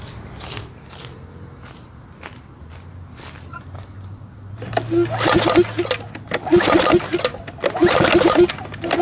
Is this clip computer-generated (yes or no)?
no